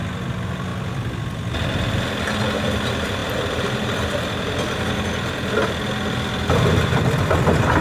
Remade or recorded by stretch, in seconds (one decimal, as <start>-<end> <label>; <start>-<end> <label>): 0.0-7.8 recorded